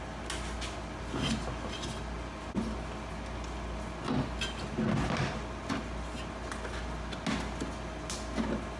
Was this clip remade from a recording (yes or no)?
no